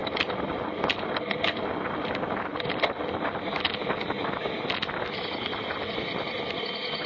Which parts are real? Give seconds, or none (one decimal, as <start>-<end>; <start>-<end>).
0.0-7.1